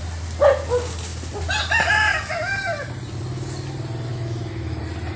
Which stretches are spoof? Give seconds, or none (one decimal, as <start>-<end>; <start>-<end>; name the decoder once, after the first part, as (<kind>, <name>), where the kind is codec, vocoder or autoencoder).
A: 4.1-4.8 (autoencoder, DAC-VAE)

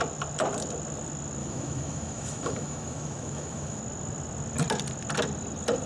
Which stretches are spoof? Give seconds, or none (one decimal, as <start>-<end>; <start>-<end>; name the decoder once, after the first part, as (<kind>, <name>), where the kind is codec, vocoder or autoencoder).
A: 1.4-3.8 (autoencoder, DAC-VAE)